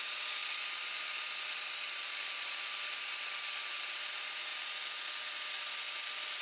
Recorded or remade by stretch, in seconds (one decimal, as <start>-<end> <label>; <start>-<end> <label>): 0.0-6.4 recorded